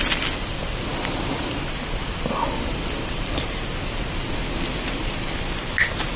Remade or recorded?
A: recorded